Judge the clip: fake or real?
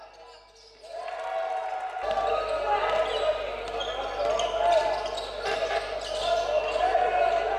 real